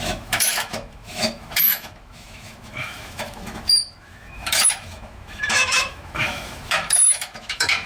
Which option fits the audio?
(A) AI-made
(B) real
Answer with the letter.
A